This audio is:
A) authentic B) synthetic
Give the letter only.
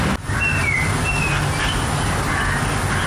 A